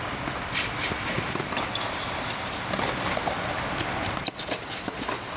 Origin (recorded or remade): recorded